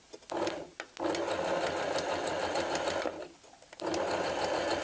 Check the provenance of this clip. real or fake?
real